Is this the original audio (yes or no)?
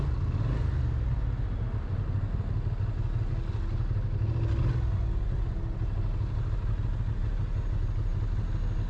yes